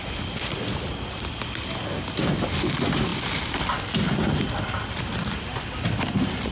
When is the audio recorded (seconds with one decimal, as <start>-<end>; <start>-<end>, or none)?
0.0-6.5